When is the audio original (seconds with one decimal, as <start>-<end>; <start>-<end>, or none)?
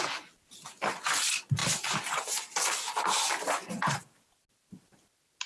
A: 0.0-5.5